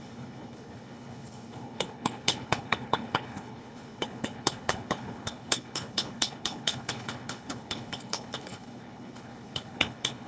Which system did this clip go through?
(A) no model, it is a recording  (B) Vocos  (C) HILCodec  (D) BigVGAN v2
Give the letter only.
C